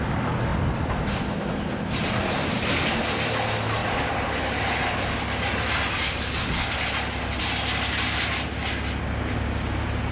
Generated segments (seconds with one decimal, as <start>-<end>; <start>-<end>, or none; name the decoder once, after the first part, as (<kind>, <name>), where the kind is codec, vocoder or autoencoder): 0.5-2.5 (vocoder, BigVGAN v2)